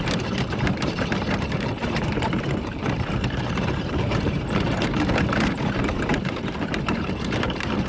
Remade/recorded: remade